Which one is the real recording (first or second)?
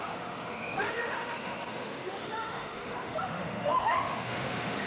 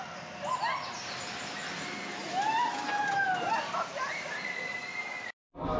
second